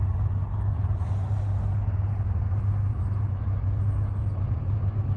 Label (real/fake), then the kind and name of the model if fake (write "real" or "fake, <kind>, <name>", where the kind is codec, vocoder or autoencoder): real